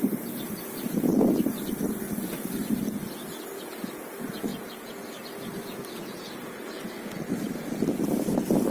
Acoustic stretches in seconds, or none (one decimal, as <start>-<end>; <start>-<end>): 0.0-4.5; 5.1-6.0; 6.8-8.7